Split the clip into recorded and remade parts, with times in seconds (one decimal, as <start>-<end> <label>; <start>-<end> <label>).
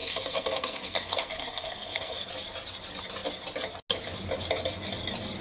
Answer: 0.0-2.3 remade; 2.3-5.4 recorded